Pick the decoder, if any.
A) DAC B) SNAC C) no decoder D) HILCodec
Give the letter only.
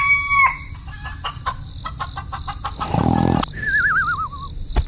C